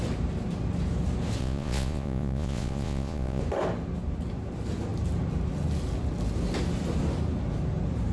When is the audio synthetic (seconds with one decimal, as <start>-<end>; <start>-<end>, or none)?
1.4-3.4